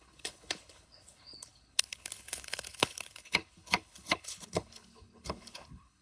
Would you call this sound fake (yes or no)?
yes